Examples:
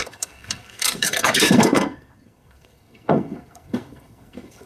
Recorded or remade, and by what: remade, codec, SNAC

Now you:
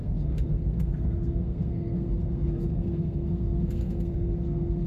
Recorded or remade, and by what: remade, codec, SNAC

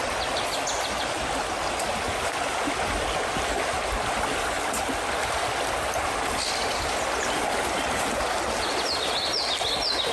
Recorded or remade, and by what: recorded